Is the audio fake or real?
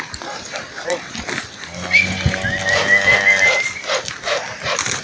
fake